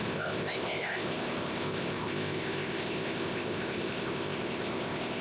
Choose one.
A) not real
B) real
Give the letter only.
A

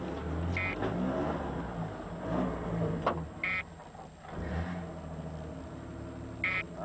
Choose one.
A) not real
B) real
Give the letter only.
B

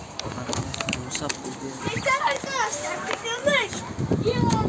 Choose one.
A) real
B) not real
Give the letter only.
A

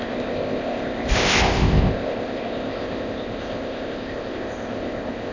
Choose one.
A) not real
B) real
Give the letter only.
A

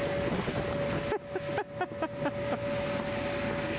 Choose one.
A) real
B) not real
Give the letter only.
A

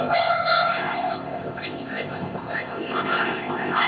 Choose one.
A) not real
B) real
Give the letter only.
A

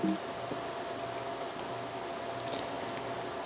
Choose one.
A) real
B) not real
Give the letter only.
A